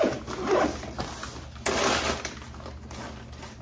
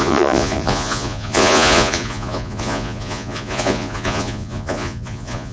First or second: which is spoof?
second